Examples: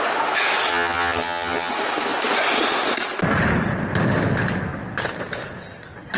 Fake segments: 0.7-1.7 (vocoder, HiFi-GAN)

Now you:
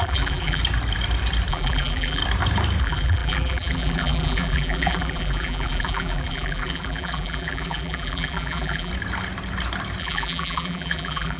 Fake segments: 0.0-0.6 (vocoder, BigVGAN v2); 1.5-2.2; 2.8-8.9; 10.0-11.4

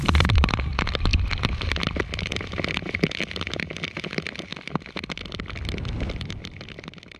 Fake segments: 1.1-3.1 (vocoder, BigVGAN v2); 4.5-5.2

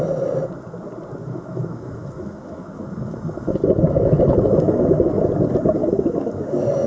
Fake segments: 1.2-5.3 (autoencoder, DAC-VAE); 5.8-6.5

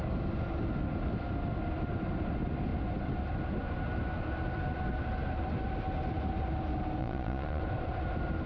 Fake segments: 7.0-7.6 (vocoder, Vocos)

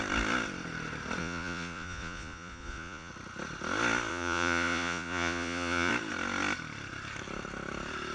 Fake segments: 1.2-3.1 (vocoder, Vocos); 4.1-5.9

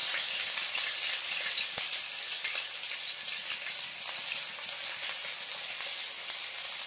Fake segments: 0.0-2.2 (vocoder, BigVGAN v2)